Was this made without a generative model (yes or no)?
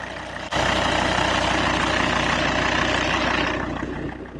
yes